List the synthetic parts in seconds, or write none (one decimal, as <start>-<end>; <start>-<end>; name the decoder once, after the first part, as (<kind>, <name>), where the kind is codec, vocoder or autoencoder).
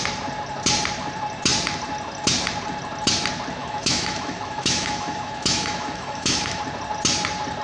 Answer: 3.6-6.6 (autoencoder, DAC-VAE)